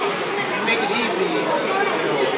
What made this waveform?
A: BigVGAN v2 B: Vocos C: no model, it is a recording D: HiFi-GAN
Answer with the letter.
C